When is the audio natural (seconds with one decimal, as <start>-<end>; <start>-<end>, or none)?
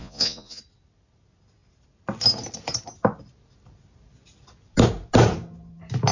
0.6-6.1